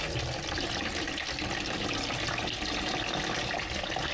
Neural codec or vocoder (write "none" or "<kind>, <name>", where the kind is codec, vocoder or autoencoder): none